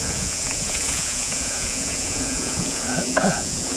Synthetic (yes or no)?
yes